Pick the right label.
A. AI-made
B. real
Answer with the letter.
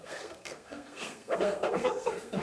A